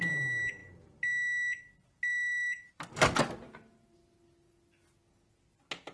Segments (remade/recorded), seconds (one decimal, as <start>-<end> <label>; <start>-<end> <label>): 0.0-5.9 recorded